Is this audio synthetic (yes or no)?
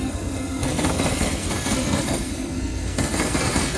yes